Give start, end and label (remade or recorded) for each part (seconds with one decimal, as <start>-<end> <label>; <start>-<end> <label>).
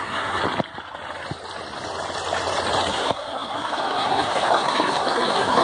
0.0-0.4 remade; 0.4-2.9 recorded; 2.9-5.6 remade